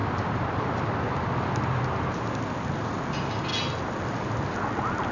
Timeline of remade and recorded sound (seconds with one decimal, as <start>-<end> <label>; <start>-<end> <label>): 0.0-5.1 recorded